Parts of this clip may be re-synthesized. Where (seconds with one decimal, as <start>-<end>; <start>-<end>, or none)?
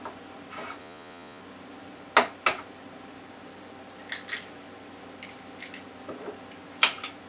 0.8-1.4